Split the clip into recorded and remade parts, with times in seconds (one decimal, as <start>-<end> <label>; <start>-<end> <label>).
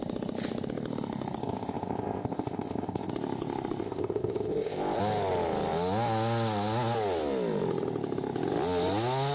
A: 0.0-1.4 recorded; 1.4-3.1 remade; 3.1-3.8 recorded; 3.8-5.0 remade; 5.0-9.3 recorded